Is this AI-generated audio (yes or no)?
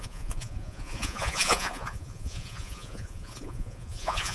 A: yes